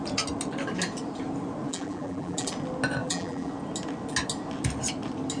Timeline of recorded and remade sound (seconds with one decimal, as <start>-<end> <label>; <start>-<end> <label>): 0.0-1.7 recorded; 1.7-2.5 remade; 2.5-3.0 recorded; 3.0-3.5 remade; 3.5-5.4 recorded

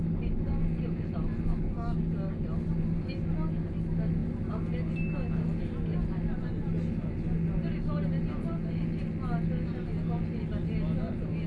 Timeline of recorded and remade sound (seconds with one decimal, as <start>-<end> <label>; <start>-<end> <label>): 0.0-11.5 recorded

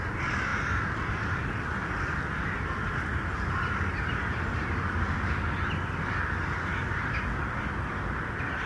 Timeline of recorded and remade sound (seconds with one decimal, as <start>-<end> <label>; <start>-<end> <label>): 0.0-8.7 recorded

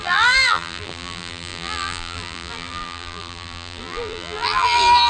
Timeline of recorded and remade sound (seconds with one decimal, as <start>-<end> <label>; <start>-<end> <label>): 0.0-5.1 remade

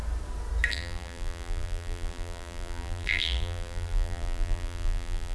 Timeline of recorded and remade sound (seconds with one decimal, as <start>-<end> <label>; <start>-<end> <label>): 0.0-0.7 recorded; 0.7-5.3 remade